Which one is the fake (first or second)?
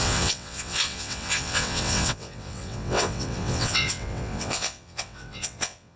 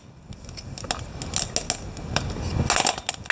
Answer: first